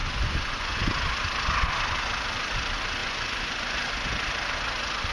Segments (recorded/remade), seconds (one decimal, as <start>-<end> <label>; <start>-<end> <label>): 0.0-0.8 remade; 0.8-3.0 recorded; 3.0-3.9 remade; 3.9-5.1 recorded